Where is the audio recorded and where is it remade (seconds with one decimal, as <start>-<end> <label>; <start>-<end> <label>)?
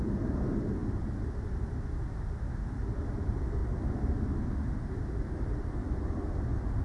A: 0.0-6.8 recorded